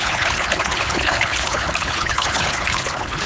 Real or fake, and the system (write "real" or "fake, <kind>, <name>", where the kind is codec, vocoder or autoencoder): fake, codec, HILCodec